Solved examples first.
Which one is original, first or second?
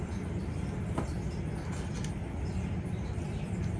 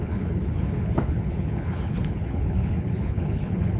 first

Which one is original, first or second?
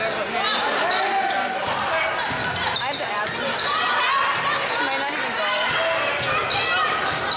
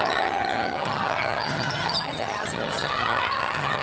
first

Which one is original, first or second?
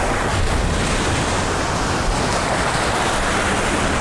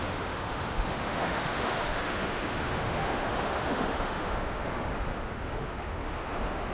first